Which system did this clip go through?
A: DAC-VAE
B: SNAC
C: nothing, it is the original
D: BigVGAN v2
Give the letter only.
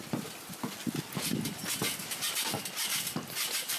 D